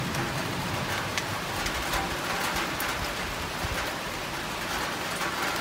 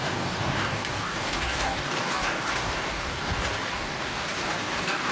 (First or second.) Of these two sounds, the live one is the first